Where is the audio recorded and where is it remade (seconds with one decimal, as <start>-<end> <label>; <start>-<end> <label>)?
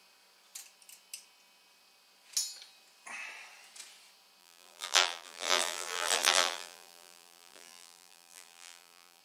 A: 0.0-4.4 recorded; 4.4-9.2 remade